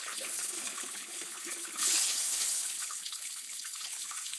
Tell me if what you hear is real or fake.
fake